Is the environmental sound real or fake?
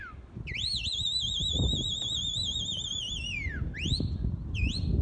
real